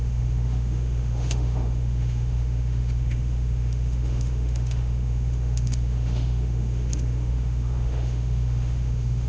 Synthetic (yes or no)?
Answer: yes